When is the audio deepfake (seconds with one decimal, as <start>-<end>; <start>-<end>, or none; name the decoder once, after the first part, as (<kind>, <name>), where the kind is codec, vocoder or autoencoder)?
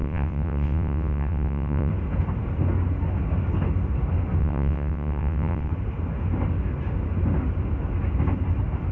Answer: 0.0-1.9 (vocoder, WaveNeXt); 4.4-5.7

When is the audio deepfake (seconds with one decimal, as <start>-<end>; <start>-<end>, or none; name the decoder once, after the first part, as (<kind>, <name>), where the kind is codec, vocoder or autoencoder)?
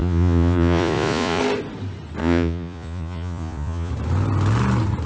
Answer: 0.0-1.4 (vocoder, Vocos); 2.2-3.9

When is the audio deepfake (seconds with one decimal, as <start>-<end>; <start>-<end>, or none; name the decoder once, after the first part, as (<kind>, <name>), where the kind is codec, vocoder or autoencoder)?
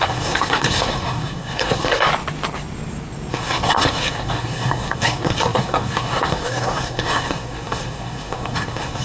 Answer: 0.0-2.1 (codec, SNAC); 3.3-9.0